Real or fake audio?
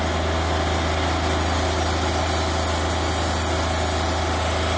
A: real